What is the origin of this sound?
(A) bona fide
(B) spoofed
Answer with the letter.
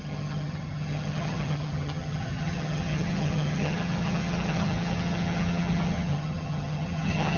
B